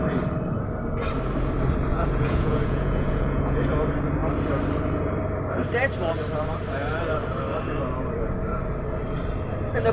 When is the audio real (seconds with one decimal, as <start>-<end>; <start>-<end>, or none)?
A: 0.0-1.9; 3.6-9.9